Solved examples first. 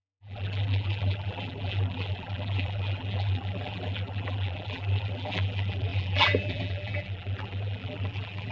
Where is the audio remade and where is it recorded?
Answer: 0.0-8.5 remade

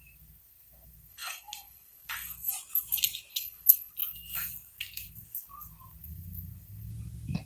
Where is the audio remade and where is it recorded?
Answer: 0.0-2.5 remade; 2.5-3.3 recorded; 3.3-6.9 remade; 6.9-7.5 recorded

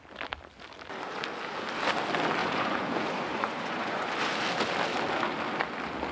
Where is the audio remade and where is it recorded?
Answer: 0.0-2.4 recorded; 2.4-4.1 remade; 4.1-6.1 recorded

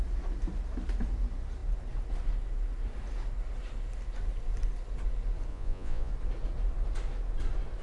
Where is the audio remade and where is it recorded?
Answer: 0.0-5.5 recorded; 5.5-6.1 remade; 6.1-7.8 recorded

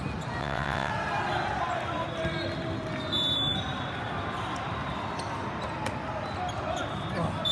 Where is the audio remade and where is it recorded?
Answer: 0.0-0.4 recorded; 0.4-0.9 remade; 0.9-7.5 recorded

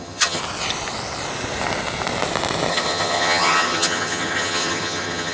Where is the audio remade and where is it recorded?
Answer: 0.0-0.4 remade; 0.4-2.7 recorded; 2.7-5.3 remade

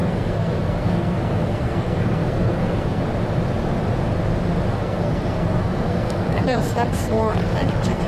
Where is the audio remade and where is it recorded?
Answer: 0.0-3.0 remade; 3.0-4.7 recorded; 4.7-8.1 remade

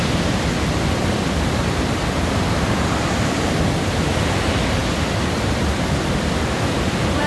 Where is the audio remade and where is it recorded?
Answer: 0.0-1.0 recorded; 1.0-3.6 remade; 3.6-4.8 recorded; 4.8-6.6 remade; 6.6-7.3 recorded